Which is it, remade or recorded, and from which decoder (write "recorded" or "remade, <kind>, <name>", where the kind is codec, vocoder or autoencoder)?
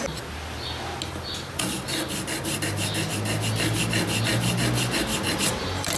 recorded